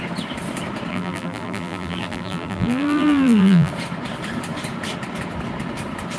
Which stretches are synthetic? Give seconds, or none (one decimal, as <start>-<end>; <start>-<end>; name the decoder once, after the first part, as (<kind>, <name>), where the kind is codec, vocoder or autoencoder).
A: 0.9-3.7 (vocoder, BigVGAN v2)